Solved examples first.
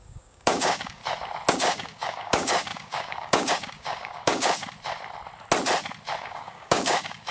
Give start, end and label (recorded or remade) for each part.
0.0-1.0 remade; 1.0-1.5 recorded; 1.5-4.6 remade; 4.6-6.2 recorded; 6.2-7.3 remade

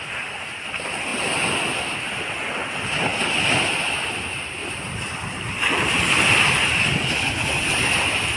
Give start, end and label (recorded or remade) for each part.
0.0-4.6 recorded; 4.6-7.1 remade; 7.1-8.4 recorded

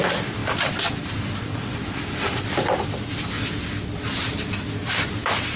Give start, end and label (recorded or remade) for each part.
0.0-0.4 recorded; 0.4-2.0 remade; 2.0-5.6 recorded

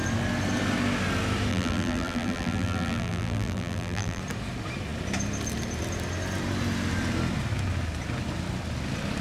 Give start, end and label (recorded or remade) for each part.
0.0-1.5 recorded; 1.5-4.2 remade; 4.2-9.2 recorded